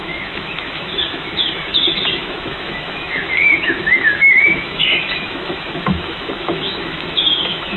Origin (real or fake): fake